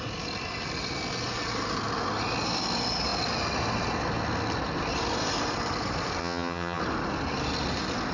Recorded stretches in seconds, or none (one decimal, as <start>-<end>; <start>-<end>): 0.0-6.2; 6.8-8.1